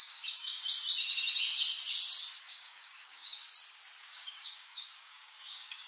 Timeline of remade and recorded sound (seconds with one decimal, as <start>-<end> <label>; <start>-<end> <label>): 0.0-0.6 remade; 0.6-2.4 recorded; 2.4-3.5 remade; 3.5-4.0 recorded; 4.0-5.9 remade